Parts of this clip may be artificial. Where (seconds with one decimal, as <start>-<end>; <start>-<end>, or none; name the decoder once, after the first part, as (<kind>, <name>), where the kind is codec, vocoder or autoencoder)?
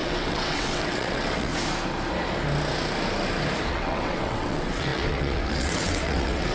0.0-1.5 (vocoder, WaveNeXt); 3.7-6.5